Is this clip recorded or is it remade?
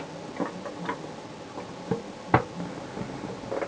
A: recorded